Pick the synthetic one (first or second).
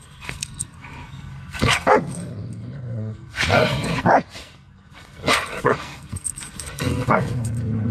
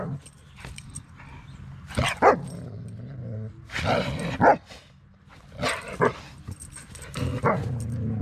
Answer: first